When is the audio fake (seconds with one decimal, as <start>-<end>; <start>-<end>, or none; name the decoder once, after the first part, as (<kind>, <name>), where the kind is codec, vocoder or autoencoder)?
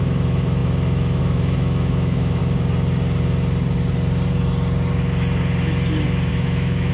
0.0-2.4 (autoencoder, DAC-VAE); 6.3-6.9